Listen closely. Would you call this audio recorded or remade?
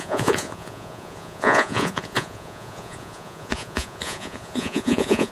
remade